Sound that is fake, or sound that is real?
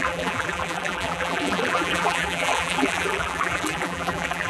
fake